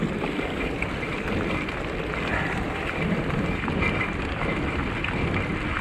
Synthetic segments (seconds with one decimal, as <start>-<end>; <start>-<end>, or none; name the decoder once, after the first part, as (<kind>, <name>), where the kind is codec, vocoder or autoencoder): 2.3-4.1 (vocoder, BigVGAN v2)